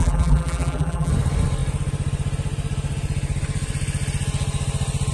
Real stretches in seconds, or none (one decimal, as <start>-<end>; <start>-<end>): 1.1-5.1

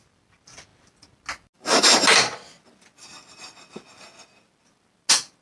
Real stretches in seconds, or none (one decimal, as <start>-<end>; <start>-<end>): 0.0-5.4

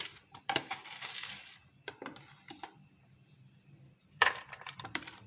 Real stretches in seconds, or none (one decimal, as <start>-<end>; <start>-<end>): 0.8-4.0

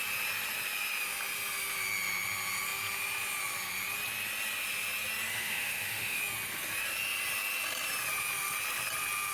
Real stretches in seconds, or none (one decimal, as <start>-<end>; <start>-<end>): 0.0-5.3; 6.2-9.3